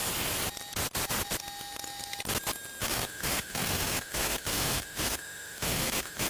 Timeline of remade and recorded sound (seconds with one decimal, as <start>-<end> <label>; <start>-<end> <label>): 0.0-2.8 recorded; 2.8-6.3 remade